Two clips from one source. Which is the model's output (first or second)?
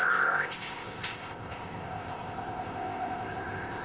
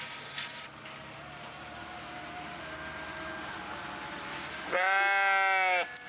first